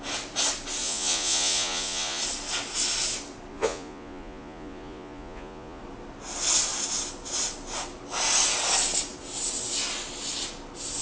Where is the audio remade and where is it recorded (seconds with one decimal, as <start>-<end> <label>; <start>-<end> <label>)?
0.0-0.8 recorded; 0.8-2.2 remade; 2.2-3.5 recorded; 3.5-5.8 remade; 5.8-11.0 recorded

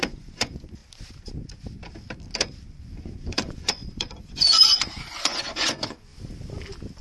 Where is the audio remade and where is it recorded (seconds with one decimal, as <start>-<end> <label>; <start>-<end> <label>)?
0.0-0.8 remade; 0.8-2.8 recorded; 2.8-6.1 remade; 6.1-7.0 recorded

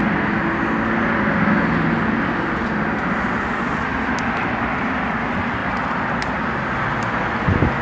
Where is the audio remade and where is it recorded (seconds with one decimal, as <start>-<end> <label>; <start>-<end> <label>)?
0.0-7.8 recorded

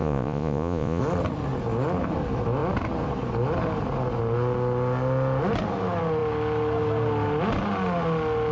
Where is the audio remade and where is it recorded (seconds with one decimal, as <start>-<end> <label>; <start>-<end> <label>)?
0.0-1.0 remade; 1.0-8.5 recorded

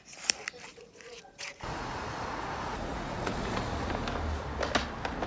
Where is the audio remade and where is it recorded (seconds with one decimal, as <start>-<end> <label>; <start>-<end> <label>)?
0.0-0.7 recorded; 0.7-3.9 remade; 3.9-5.3 recorded

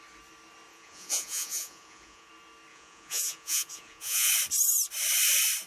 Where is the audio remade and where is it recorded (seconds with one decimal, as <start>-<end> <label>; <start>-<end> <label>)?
0.0-0.7 recorded; 0.7-2.3 remade; 2.3-2.7 recorded; 2.7-4.3 remade; 4.3-5.7 recorded

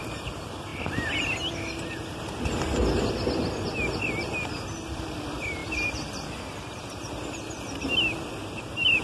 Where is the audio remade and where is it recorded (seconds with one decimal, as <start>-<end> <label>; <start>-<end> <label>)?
0.0-9.0 recorded

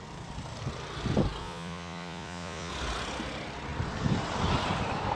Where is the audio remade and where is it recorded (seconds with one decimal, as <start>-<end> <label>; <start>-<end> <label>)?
0.0-1.4 recorded; 1.4-2.7 remade; 2.7-5.2 recorded